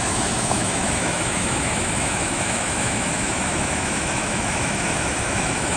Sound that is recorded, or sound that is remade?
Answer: remade